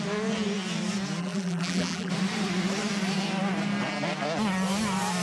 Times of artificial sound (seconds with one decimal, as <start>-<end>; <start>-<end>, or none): 1.2-2.1